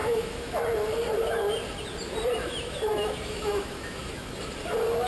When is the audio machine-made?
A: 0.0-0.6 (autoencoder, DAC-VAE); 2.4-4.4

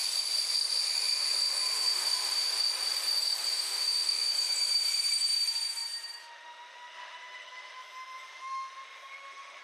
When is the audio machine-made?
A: 1.7-2.5 (autoencoder, DAC-VAE); 3.5-4.3; 6.2-9.6

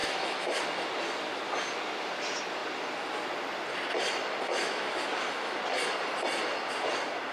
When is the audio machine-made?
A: 0.0-0.6 (autoencoder, DAC-VAE); 4.5-5.6

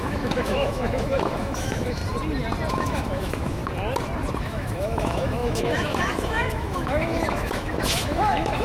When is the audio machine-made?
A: 0.0-2.0 (autoencoder, DAC-VAE); 2.7-3.6; 4.4-8.6

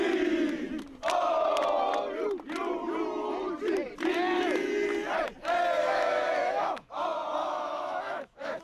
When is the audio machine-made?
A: 5.8-6.9 (autoencoder, DAC-VAE); 7.4-8.6

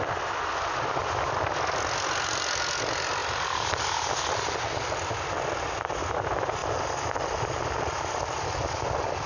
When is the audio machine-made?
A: none

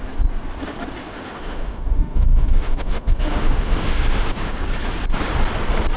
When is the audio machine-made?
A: 1.0-4.6 (autoencoder, DAC-VAE)

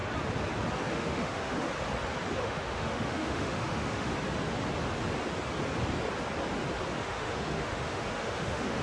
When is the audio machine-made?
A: 0.9-1.7 (autoencoder, DAC-VAE); 2.4-4.1; 7.0-8.8